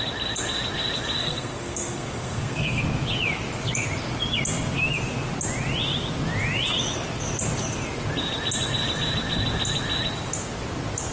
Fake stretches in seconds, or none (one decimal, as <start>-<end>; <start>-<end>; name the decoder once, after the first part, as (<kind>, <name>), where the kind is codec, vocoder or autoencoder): 1.2-2.8 (codec, SNAC)